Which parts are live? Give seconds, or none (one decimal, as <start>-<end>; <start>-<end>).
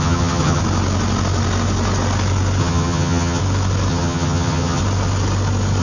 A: 0.6-2.6; 3.4-3.9; 4.8-5.8